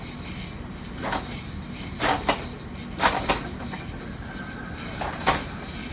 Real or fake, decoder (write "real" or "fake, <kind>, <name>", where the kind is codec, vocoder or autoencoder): real